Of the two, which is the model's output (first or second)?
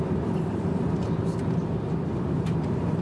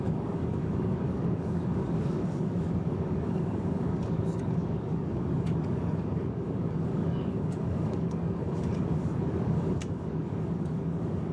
second